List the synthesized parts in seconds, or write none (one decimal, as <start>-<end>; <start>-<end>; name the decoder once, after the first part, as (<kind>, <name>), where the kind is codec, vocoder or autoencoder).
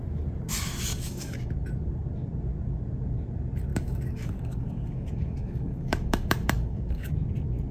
0.9-1.5 (codec, DAC); 3.7-7.1